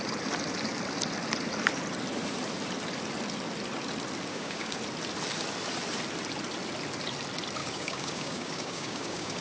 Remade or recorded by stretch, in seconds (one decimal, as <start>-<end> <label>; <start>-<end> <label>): 0.0-4.3 recorded; 4.3-4.8 remade; 4.8-7.6 recorded; 7.6-9.4 remade